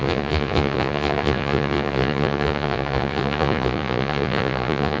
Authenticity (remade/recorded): remade